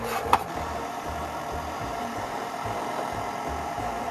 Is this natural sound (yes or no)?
no